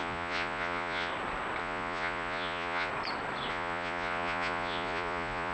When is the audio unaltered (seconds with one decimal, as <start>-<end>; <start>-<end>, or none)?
1.1-1.6; 2.9-3.5